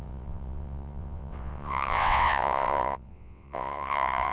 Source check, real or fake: fake